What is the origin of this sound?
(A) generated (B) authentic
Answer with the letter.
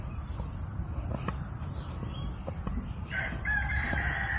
A